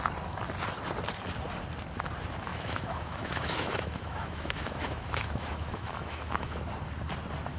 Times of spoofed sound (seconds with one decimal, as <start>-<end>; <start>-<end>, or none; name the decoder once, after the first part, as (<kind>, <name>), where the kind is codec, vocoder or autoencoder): 2.5-6.7 (autoencoder, DAC-VAE)